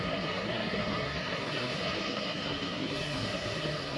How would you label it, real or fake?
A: fake